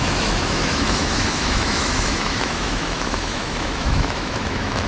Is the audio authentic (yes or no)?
no